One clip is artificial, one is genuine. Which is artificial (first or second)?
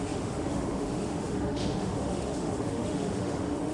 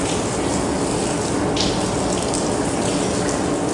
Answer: first